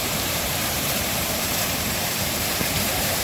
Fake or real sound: fake